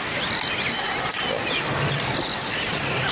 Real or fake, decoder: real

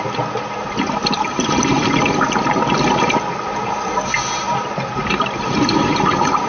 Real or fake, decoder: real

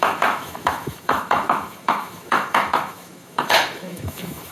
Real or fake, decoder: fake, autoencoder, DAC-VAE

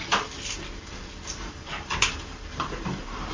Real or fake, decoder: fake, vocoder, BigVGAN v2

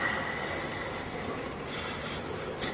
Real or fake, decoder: real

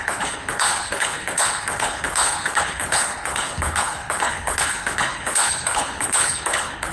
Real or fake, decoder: fake, codec, HILCodec